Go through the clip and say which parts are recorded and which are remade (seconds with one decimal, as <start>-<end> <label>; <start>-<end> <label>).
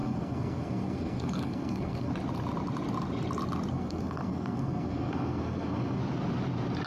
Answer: 0.0-2.1 remade; 2.1-3.7 recorded; 3.7-6.0 remade; 6.0-6.9 recorded